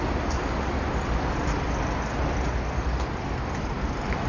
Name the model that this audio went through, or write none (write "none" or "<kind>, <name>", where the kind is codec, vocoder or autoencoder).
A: none